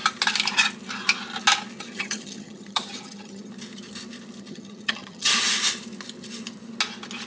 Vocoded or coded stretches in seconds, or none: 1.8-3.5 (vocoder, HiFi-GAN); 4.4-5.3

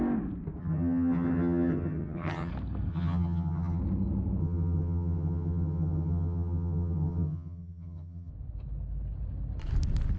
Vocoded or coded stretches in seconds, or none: 0.6-2.5 (vocoder, HiFi-GAN); 2.9-3.8; 4.4-8.3